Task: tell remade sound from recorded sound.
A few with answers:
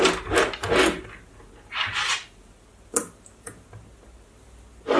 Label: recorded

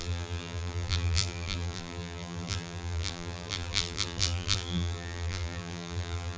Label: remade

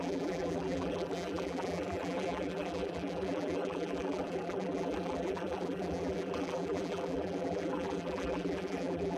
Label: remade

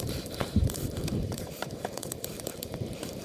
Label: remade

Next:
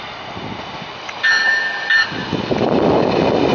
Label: recorded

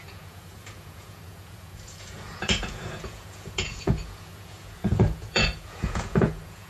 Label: remade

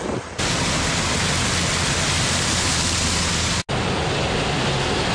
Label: recorded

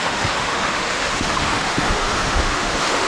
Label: remade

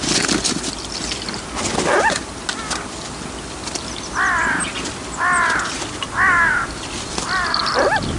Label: recorded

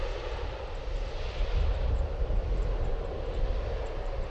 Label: recorded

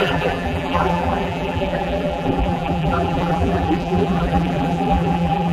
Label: remade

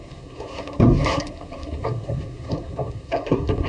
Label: remade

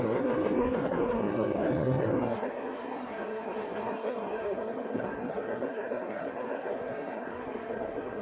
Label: remade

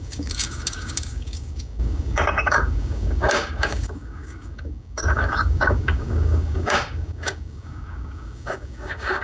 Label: remade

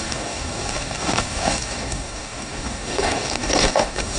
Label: remade